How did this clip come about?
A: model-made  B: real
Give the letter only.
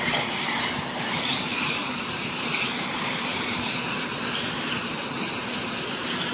A